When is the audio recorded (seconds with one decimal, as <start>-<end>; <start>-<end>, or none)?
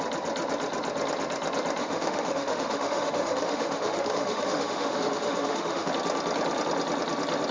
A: 0.0-1.8; 5.9-7.5